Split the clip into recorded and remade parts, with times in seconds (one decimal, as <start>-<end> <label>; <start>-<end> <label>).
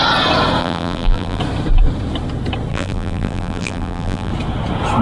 0.0-0.6 recorded; 0.6-1.4 remade; 1.4-2.7 recorded; 2.7-4.3 remade; 4.3-5.0 recorded